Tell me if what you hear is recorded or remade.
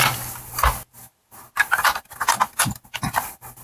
recorded